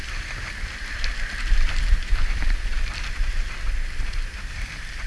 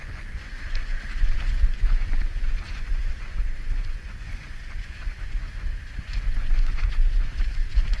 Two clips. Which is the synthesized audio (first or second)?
second